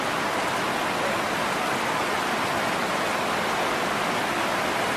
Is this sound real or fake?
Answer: real